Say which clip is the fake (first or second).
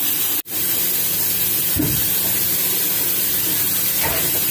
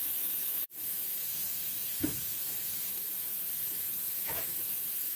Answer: second